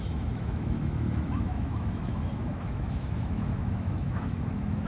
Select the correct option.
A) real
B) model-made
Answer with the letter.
B